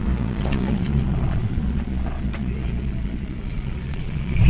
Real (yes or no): no